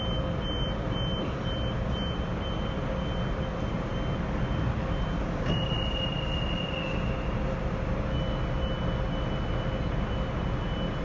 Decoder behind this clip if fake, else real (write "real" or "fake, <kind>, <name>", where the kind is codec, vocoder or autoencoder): real